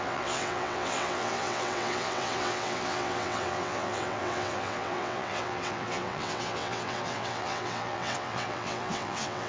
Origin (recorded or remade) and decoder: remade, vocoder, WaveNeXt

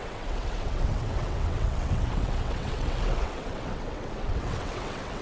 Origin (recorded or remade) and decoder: remade, vocoder, WaveNeXt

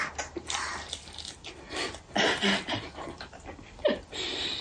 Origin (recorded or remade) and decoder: recorded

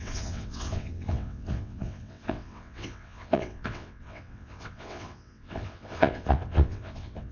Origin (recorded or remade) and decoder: remade, vocoder, WaveNeXt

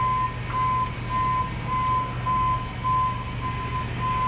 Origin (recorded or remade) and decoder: recorded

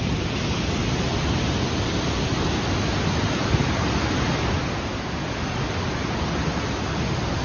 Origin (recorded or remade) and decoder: recorded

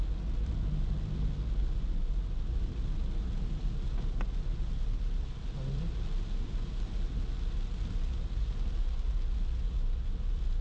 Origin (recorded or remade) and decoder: recorded